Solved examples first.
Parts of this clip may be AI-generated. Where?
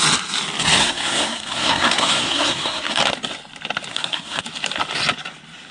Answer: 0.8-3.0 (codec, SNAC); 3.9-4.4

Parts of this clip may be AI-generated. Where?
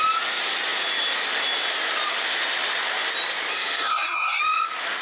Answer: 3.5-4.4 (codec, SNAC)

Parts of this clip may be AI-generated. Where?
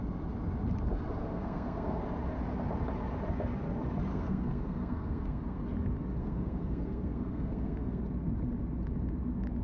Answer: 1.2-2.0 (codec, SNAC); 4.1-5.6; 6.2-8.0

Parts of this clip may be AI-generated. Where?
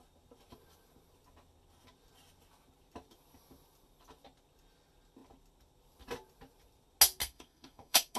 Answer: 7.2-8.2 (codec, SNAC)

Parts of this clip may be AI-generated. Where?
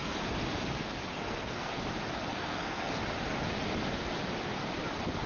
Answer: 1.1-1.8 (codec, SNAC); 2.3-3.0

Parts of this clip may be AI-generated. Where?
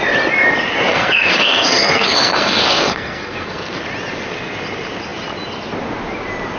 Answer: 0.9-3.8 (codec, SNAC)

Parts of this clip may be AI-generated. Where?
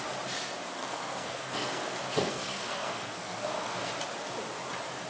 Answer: 0.8-3.9 (codec, SNAC)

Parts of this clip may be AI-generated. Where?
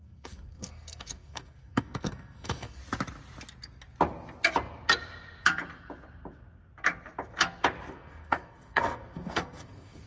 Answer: 0.0-2.8 (codec, SNAC); 7.9-10.1